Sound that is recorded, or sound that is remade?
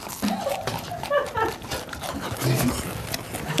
recorded